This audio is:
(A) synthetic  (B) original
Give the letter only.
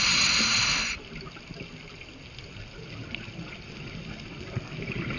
B